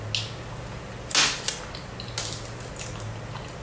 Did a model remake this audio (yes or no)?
no